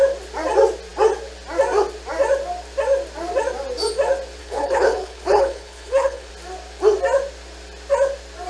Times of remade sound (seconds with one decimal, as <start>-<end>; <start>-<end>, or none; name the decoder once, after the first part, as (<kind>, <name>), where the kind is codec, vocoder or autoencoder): 4.4-6.3 (codec, HILCodec)